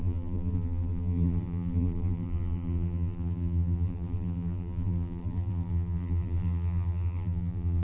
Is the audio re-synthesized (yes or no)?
yes